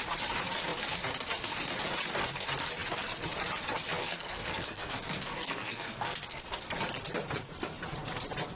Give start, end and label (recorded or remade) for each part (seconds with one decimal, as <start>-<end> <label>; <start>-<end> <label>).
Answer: 0.0-4.0 recorded; 4.0-6.4 remade; 6.4-8.6 recorded